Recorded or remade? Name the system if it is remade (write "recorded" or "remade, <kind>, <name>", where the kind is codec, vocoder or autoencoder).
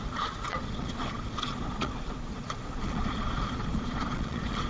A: remade, vocoder, Vocos